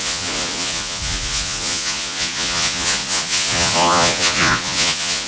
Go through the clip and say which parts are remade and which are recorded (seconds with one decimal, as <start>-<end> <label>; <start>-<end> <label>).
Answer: 0.0-5.3 remade